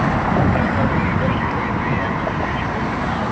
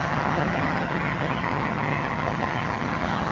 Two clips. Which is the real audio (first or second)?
first